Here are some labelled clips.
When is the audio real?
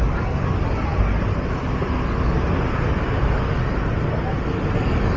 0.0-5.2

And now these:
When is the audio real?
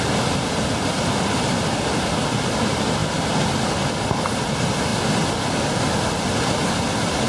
0.0-7.3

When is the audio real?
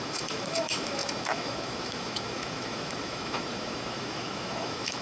none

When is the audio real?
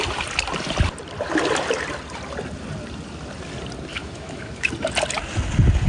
0.0-3.9; 4.7-5.9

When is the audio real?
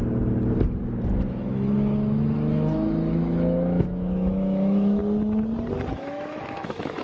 0.0-1.3; 5.0-5.9